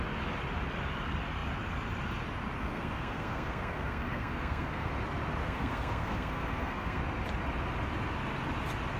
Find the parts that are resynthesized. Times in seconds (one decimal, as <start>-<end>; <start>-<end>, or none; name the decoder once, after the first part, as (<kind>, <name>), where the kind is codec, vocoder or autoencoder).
2.6-4.9 (codec, SNAC); 5.4-7.0

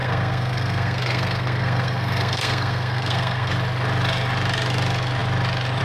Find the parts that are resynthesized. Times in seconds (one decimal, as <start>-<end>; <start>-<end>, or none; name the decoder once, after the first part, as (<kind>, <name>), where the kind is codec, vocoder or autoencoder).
0.0-3.5 (codec, SNAC)

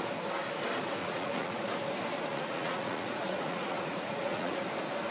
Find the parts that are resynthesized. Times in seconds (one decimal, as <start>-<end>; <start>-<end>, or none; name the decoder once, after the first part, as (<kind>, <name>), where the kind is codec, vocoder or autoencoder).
1.0-1.6 (vocoder, Vocos); 2.3-4.6